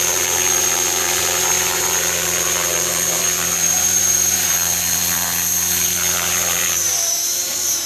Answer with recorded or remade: remade